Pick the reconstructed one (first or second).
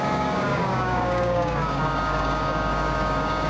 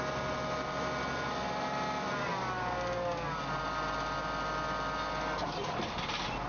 first